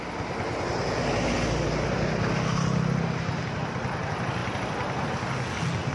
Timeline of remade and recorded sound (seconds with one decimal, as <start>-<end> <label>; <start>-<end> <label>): 0.0-5.9 recorded